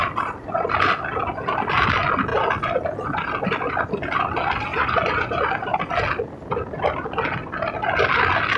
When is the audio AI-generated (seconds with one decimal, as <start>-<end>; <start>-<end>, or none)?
4.7-5.6